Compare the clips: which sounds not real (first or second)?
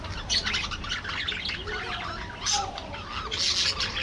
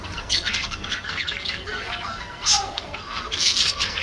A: second